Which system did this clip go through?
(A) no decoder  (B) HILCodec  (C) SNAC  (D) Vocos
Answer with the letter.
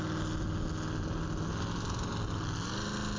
A